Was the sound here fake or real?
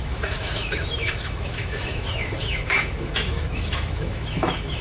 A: fake